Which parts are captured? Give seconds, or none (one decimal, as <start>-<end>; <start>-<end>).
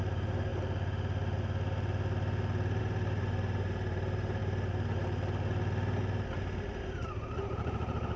0.5-2.8; 4.4-6.8